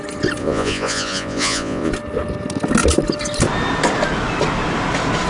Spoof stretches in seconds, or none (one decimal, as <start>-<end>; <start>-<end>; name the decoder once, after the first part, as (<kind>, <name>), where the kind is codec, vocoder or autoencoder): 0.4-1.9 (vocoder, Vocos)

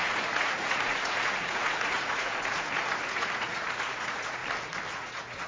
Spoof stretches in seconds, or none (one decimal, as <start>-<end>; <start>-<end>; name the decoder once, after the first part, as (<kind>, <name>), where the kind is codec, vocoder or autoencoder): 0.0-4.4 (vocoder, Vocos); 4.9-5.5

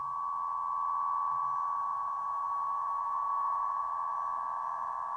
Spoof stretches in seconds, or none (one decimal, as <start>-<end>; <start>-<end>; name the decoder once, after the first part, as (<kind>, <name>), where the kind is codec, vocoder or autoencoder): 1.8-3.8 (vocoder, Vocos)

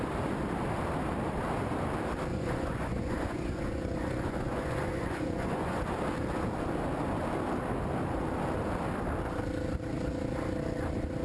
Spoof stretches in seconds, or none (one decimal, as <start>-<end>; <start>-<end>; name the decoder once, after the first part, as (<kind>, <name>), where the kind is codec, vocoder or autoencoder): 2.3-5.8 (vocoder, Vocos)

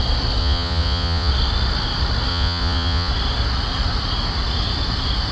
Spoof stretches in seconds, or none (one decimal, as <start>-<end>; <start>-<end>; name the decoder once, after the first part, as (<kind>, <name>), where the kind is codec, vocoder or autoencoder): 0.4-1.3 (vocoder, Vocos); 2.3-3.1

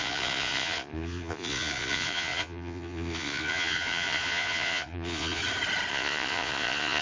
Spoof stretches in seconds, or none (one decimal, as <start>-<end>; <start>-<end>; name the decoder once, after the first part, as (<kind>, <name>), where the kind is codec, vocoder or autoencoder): 0.0-5.4 (vocoder, Vocos); 5.9-7.0

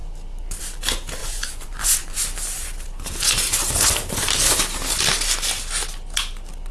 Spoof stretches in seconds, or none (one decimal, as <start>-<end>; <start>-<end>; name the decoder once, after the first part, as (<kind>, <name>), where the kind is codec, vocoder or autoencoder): 1.2-2.2 (vocoder, Vocos)

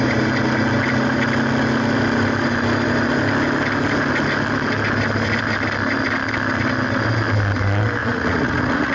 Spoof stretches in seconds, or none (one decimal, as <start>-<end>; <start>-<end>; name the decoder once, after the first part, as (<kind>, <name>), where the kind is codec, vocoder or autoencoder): 8.0-8.9 (vocoder, Vocos)